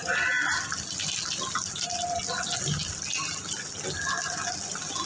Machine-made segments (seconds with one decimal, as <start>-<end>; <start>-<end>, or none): none